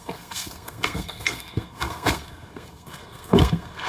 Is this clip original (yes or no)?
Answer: no